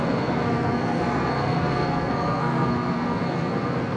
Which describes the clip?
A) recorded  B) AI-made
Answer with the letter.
B